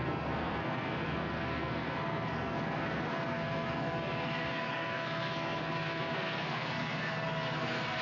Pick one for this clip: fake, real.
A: fake